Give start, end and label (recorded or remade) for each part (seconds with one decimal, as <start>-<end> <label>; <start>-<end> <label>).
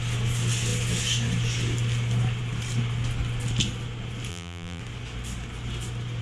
0.0-4.3 recorded; 4.3-4.8 remade; 4.8-6.2 recorded